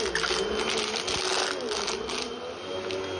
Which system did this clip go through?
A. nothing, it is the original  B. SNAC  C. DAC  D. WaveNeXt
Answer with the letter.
A